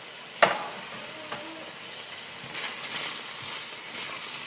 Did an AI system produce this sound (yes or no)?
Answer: no